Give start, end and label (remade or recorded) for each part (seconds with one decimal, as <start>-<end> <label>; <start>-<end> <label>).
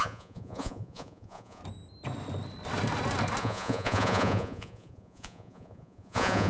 0.0-1.6 remade; 1.6-3.4 recorded; 3.4-6.5 remade